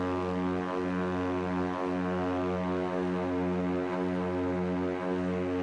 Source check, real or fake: real